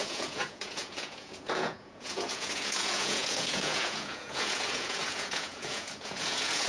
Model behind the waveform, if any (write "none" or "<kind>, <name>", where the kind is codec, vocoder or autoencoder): vocoder, Vocos